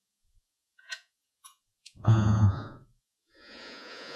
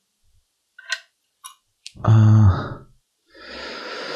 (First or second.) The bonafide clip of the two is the second